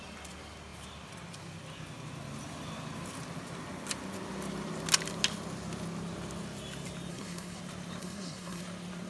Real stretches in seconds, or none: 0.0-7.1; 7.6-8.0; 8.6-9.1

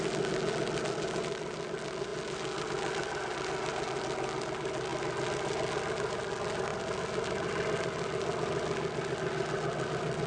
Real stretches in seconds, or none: 0.0-10.3

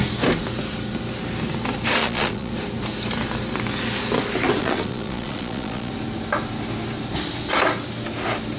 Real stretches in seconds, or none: 0.0-2.0; 2.5-4.6; 5.9-8.6

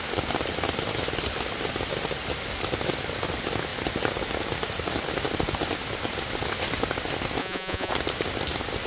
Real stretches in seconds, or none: 0.0-7.4; 7.9-8.9

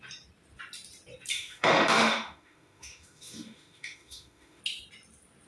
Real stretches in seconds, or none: 0.0-1.3; 4.6-5.5

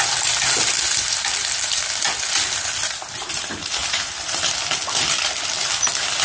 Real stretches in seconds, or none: 0.0-3.8; 5.2-6.2

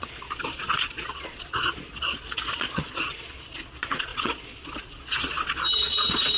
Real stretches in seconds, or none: none

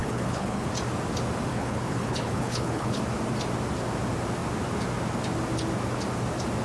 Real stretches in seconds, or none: 0.7-1.5; 3.0-6.6